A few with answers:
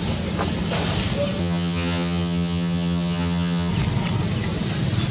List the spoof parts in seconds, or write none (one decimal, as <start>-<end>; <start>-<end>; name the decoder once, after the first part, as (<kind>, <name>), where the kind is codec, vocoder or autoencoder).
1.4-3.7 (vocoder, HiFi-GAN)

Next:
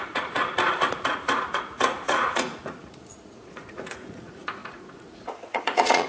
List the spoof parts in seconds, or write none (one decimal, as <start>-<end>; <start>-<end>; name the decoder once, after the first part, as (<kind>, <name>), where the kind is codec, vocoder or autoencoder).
0.0-6.1 (vocoder, Vocos)

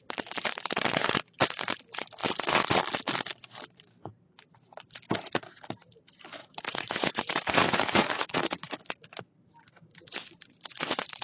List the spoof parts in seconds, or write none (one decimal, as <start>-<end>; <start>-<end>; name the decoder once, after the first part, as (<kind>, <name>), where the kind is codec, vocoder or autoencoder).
6.4-8.7 (vocoder, Vocos); 9.9-11.2